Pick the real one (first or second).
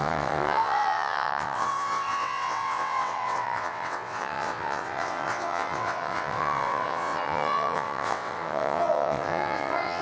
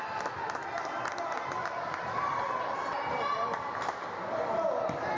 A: second